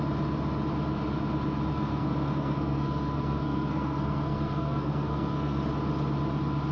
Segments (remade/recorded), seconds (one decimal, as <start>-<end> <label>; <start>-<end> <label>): 0.0-1.7 recorded; 1.7-5.7 remade; 5.7-6.7 recorded